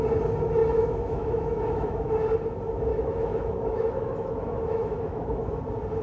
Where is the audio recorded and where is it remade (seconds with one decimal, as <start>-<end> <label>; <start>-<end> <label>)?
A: 0.0-0.6 recorded; 0.6-2.1 remade; 2.1-2.9 recorded; 2.9-5.6 remade; 5.6-6.0 recorded